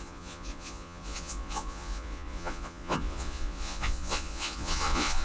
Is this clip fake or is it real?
fake